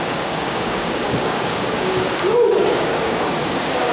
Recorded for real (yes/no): no